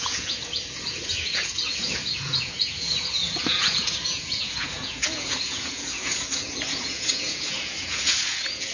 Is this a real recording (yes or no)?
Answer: no